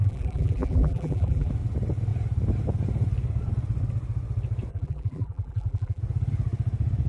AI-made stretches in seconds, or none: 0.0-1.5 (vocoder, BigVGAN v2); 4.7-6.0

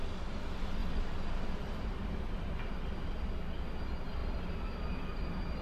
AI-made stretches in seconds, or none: 0.8-3.3 (vocoder, BigVGAN v2); 4.2-5.6

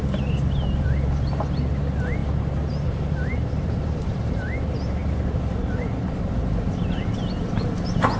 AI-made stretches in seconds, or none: none

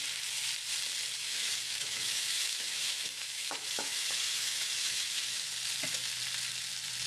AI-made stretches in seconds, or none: 1.2-5.5 (autoencoder, DAC-VAE)

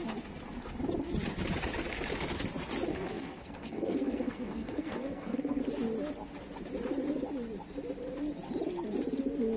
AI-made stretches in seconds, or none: 2.9-5.6 (codec, SNAC)

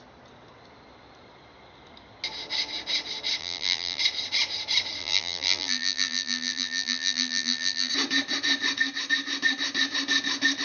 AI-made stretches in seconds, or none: 3.4-4.0 (vocoder, BigVGAN v2); 5.0-7.9

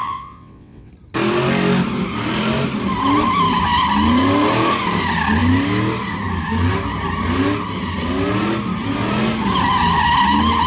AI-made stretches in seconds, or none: 0.0-0.9 (vocoder, WaveNeXt)